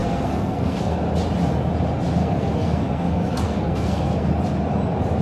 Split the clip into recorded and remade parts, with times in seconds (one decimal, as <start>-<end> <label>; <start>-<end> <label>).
0.0-1.0 remade; 1.0-2.2 recorded; 2.2-4.3 remade; 4.3-5.2 recorded